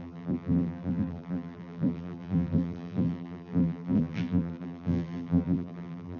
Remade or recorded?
remade